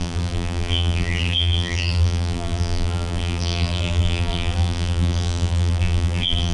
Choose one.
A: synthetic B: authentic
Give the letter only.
A